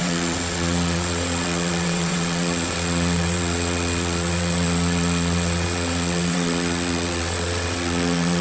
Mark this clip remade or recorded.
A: remade